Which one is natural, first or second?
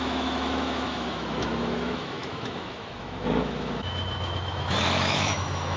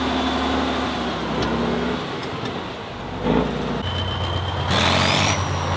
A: second